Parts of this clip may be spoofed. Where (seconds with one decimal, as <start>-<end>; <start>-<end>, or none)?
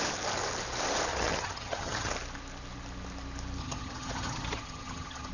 1.1-2.1; 3.6-5.3